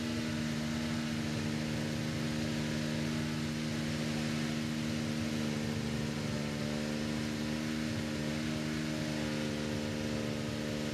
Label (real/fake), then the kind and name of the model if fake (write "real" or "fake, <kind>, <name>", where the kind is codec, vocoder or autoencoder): real